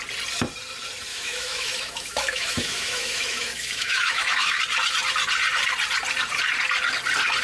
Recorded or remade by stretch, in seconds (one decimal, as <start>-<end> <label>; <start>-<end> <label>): 0.0-1.1 recorded; 1.1-4.6 remade; 4.6-7.4 recorded